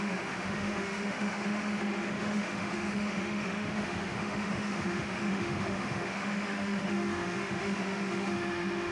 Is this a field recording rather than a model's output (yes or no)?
no